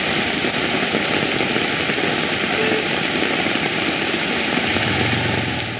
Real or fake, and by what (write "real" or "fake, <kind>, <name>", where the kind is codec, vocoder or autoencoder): real